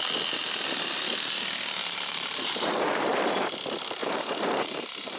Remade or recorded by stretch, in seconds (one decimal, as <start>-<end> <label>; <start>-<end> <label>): 0.0-1.8 recorded; 1.8-3.4 remade; 3.4-4.0 recorded; 4.0-5.2 remade